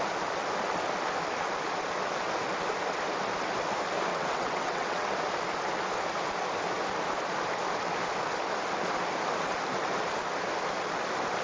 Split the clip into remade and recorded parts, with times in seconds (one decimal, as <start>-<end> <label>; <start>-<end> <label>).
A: 0.0-4.1 recorded; 4.1-5.1 remade; 5.1-11.4 recorded